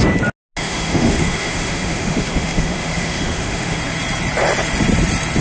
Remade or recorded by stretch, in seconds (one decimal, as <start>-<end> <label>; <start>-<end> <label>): 0.0-0.6 recorded; 0.6-3.8 remade; 3.8-5.4 recorded